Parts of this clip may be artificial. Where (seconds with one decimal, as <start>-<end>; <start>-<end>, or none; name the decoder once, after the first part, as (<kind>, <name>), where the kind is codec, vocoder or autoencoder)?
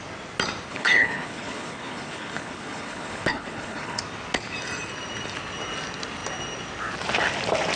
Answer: 0.7-4.0 (codec, HILCodec)